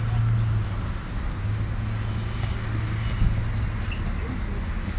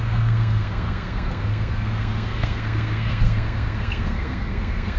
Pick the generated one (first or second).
second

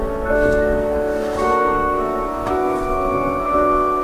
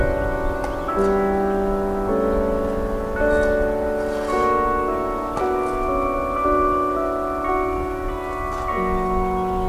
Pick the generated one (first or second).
first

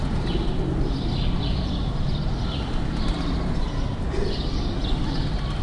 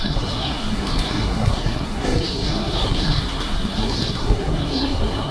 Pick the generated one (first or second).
second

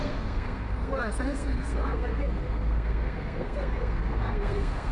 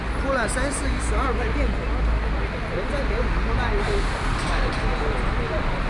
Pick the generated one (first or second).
first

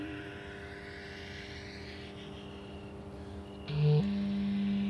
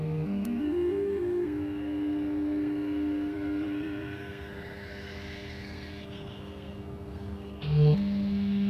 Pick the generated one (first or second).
second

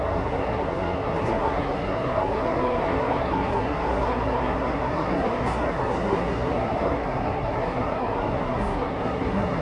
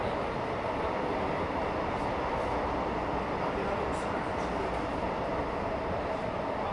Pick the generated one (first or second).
first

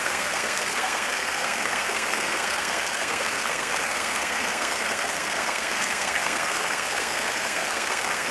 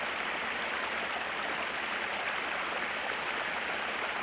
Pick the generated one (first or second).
first